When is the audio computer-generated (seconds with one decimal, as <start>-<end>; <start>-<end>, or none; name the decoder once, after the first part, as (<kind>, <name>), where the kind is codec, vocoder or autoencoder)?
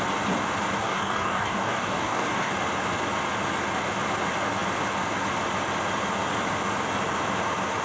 0.8-2.5 (codec, DAC)